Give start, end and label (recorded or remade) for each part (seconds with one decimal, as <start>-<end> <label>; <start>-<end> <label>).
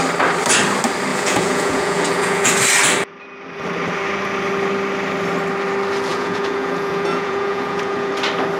0.0-1.1 recorded; 1.1-2.5 remade; 2.5-6.1 recorded; 6.1-8.1 remade; 8.1-8.6 recorded